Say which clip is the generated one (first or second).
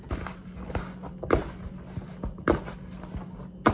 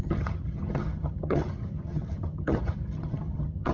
second